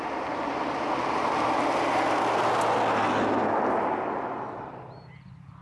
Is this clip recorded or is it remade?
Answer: recorded